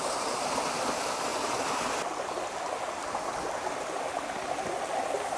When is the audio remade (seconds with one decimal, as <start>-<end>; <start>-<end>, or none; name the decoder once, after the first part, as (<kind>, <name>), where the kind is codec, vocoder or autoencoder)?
none